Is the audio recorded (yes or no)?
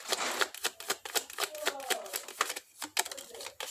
yes